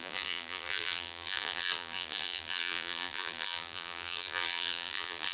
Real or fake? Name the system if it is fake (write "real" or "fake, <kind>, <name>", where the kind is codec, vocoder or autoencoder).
fake, vocoder, BigVGAN v2